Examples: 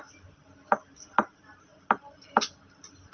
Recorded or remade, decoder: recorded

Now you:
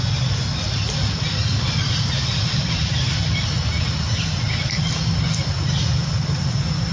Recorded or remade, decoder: recorded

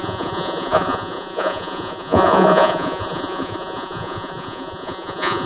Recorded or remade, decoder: remade, vocoder, Vocos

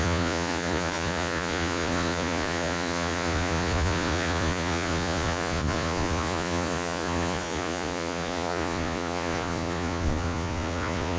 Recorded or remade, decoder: remade, vocoder, Vocos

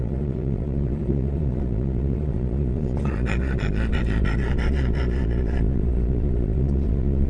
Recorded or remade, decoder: remade, vocoder, Vocos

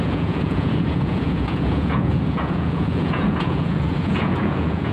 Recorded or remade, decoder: remade, vocoder, Vocos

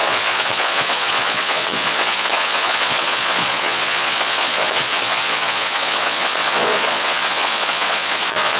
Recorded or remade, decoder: remade, vocoder, Vocos